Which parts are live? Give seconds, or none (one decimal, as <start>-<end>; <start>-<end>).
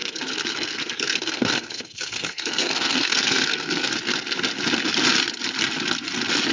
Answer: 3.9-6.5